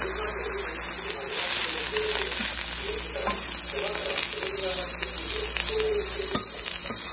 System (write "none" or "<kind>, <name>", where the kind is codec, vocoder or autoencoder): none